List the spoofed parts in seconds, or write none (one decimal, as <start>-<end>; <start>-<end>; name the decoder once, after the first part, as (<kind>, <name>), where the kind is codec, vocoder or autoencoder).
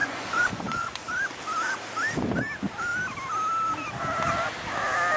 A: 0.0-1.1 (vocoder, Vocos)